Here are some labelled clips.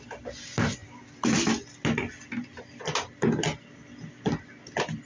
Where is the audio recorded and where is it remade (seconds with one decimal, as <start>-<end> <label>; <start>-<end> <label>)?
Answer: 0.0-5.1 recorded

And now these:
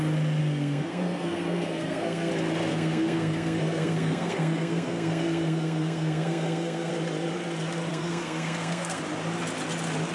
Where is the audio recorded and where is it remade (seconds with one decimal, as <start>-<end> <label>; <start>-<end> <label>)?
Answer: 0.0-0.4 recorded; 0.4-2.3 remade; 2.3-2.7 recorded; 2.7-6.9 remade; 6.9-7.9 recorded; 7.9-9.0 remade; 9.0-10.1 recorded

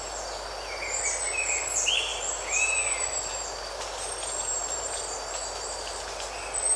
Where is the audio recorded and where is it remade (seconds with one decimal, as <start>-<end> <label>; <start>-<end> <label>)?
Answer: 0.0-6.8 recorded

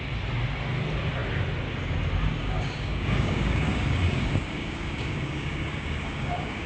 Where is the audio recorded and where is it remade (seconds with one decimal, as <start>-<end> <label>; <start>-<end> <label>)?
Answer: 0.0-2.4 recorded; 2.4-6.7 remade

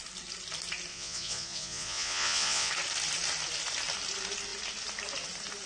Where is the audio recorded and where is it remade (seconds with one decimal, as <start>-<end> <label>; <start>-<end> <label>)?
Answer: 0.0-0.9 recorded; 0.9-2.7 remade; 2.7-5.7 recorded

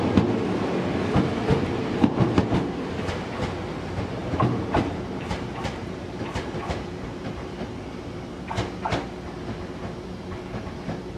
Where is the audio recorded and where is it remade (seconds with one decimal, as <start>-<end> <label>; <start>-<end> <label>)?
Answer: 0.0-4.2 recorded; 4.2-8.3 remade; 8.3-11.2 recorded